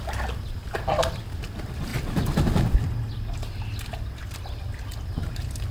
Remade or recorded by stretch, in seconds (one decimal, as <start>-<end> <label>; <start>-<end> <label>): 0.0-5.7 recorded